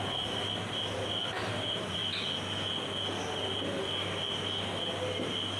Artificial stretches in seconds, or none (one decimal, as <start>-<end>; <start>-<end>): 0.0-2.0